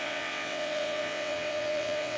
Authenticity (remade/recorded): remade